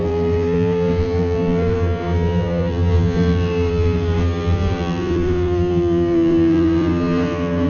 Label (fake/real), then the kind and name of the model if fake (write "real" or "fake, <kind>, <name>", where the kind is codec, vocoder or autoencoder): fake, vocoder, BigVGAN v2